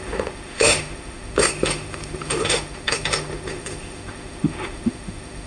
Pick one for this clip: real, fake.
fake